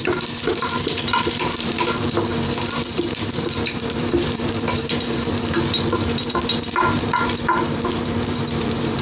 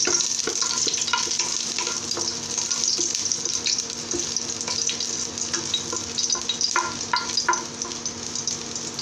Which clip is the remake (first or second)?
first